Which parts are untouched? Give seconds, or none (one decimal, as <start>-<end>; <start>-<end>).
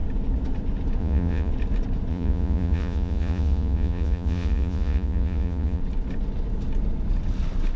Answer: 0.0-1.0; 1.5-2.1; 5.8-7.8